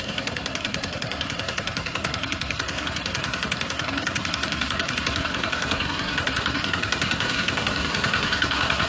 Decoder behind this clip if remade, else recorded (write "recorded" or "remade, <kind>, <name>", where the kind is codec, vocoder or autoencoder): remade, codec, SNAC